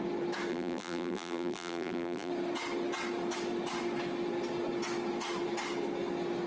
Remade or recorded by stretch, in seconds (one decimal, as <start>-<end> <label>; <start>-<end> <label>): 0.0-0.5 recorded; 0.5-2.3 remade; 2.3-6.5 recorded